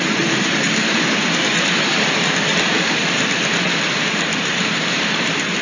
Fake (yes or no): yes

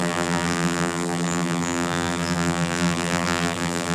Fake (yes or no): yes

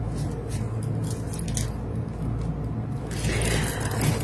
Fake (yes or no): no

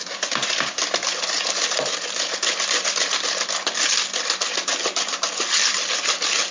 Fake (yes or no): no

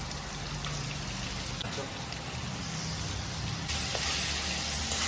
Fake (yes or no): no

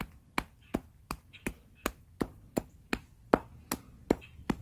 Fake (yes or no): no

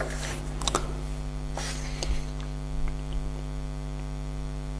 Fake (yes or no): no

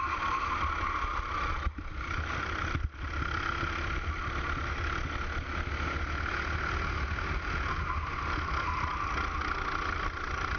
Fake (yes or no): no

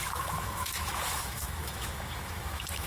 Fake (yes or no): yes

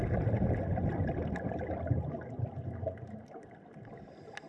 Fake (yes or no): no